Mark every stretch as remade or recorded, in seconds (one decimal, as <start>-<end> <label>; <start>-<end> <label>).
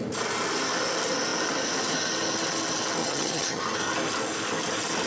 0.0-3.0 recorded; 3.0-3.6 remade; 3.6-5.1 recorded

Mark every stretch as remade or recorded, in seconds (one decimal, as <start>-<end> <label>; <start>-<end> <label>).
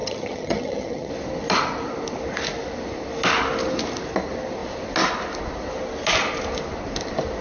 0.0-1.1 remade; 1.1-7.4 recorded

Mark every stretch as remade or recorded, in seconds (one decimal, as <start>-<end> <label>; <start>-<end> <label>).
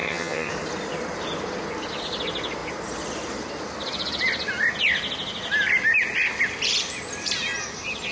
0.0-0.5 remade; 0.5-8.1 recorded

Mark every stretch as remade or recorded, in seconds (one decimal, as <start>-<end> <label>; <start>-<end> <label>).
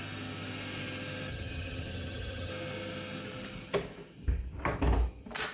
0.0-1.3 recorded; 1.3-2.5 remade; 2.5-5.5 recorded